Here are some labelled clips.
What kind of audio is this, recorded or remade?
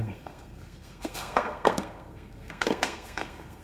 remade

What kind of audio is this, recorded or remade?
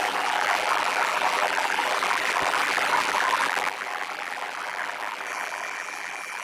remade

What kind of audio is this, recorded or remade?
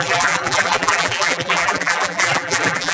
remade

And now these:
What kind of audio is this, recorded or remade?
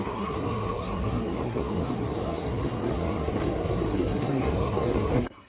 remade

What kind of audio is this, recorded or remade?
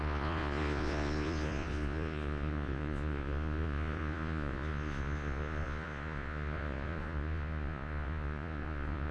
remade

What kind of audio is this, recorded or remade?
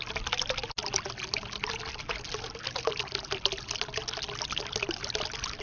recorded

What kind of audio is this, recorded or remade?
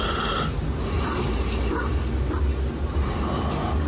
recorded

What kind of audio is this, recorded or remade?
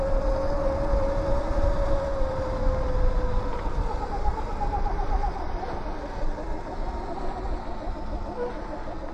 recorded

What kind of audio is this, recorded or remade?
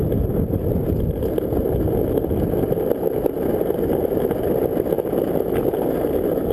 recorded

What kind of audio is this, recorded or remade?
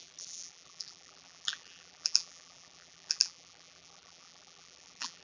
remade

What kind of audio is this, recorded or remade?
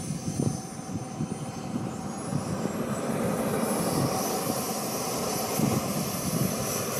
recorded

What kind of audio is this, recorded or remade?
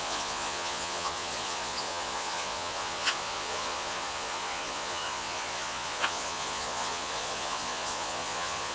remade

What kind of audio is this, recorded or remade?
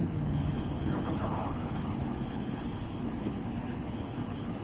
remade